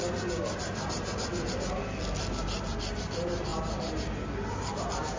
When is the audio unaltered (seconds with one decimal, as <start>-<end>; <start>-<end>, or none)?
0.0-3.5; 4.0-5.2